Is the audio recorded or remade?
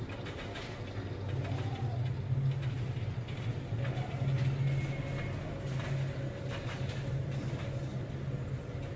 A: recorded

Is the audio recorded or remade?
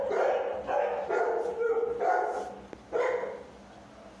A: recorded